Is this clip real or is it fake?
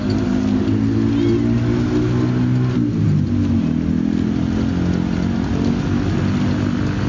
real